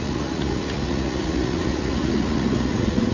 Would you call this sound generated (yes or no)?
yes